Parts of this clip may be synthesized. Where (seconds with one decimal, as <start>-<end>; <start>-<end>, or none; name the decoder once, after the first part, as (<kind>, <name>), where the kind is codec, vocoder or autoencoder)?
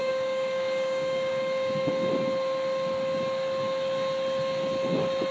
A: 0.0-1.9 (codec, DAC)